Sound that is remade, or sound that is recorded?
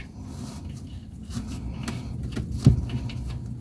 recorded